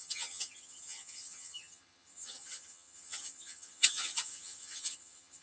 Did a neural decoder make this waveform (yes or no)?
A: yes